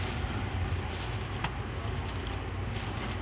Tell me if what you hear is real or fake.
real